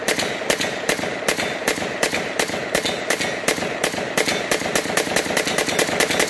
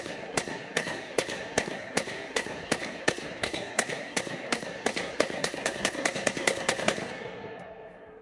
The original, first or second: first